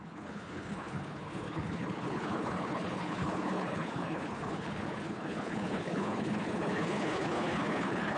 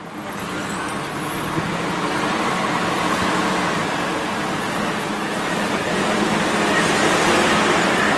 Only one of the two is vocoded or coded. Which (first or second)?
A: first